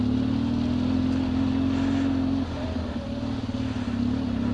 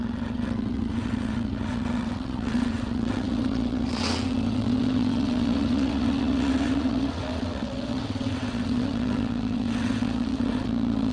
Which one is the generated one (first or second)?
second